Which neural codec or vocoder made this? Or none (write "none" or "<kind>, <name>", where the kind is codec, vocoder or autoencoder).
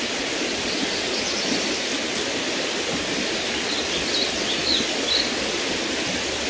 none